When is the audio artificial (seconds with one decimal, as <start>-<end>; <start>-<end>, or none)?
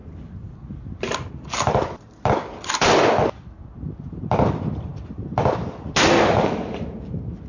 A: none